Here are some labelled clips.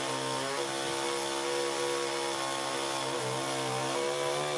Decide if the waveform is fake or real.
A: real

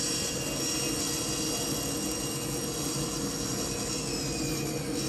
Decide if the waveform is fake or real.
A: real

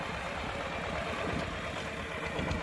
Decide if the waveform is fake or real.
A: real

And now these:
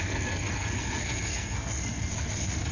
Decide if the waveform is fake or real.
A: fake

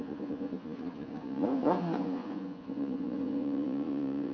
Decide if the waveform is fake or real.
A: fake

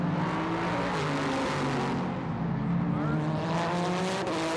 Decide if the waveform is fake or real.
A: real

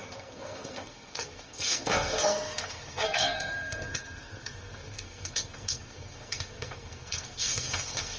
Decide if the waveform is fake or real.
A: fake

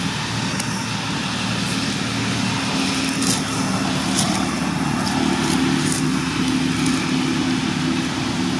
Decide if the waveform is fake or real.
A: real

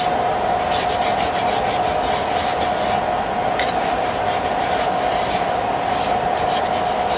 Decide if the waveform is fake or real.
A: real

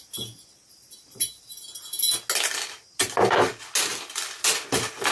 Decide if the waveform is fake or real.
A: real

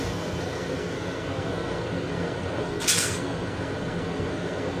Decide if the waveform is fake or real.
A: fake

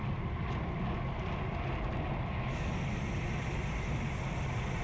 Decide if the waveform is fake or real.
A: real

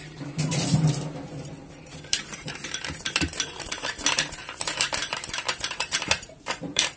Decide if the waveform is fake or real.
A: fake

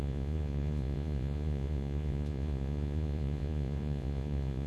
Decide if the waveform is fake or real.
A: fake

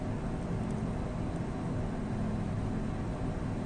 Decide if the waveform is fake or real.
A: real